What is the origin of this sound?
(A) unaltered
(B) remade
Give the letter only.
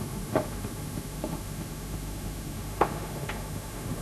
B